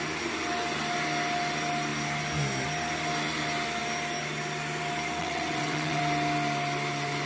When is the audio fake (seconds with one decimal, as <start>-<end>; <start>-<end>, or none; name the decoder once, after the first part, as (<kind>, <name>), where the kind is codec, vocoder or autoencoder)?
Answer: 5.2-6.0 (vocoder, WaveNeXt)